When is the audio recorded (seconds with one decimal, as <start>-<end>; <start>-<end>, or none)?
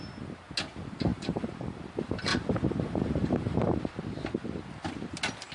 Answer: 0.0-1.1; 1.8-2.3; 3.9-5.5